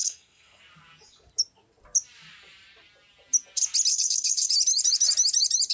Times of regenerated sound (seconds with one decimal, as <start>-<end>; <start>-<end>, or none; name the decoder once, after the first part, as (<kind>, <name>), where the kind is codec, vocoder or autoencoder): 0.0-0.6 (codec, SNAC); 3.9-4.5